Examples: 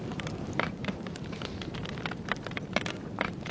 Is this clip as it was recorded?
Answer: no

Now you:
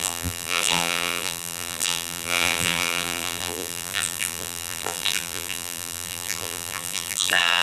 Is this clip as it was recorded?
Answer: no